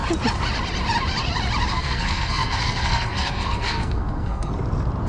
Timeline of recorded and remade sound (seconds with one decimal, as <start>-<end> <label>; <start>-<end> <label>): 0.0-1.7 recorded; 1.7-4.5 remade; 4.5-5.1 recorded